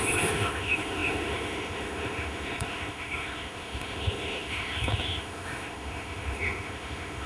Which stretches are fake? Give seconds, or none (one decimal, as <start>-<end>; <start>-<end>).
0.0-7.3